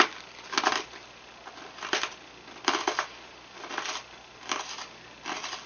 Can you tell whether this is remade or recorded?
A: recorded